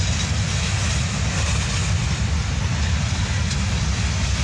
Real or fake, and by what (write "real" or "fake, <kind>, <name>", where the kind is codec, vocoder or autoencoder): real